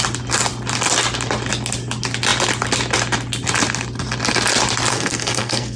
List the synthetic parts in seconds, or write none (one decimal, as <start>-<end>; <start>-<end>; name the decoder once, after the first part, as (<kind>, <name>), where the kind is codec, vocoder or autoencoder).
4.9-5.8 (codec, SNAC)

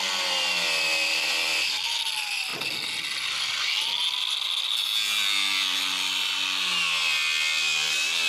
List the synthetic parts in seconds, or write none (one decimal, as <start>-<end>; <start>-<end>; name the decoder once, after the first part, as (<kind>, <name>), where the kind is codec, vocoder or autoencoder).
none

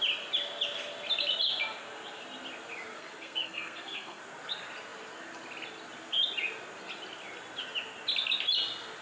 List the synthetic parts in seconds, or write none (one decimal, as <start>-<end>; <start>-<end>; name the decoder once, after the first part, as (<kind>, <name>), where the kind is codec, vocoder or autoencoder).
3.0-4.2 (codec, SNAC)

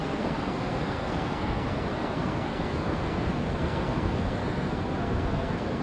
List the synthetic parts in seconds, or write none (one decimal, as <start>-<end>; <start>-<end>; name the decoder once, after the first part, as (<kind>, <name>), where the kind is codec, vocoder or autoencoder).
0.0-5.8 (codec, SNAC)

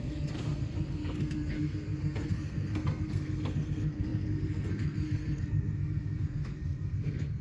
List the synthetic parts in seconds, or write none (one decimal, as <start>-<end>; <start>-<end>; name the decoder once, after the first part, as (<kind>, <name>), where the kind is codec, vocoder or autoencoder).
0.0-7.4 (codec, SNAC)

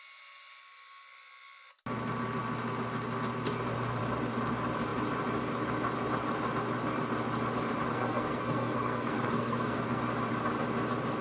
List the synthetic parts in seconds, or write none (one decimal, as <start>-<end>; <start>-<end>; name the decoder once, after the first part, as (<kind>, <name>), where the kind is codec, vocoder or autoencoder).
7.9-10.0 (codec, SNAC)